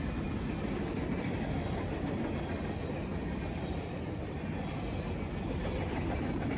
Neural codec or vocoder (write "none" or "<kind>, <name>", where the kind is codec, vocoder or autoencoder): none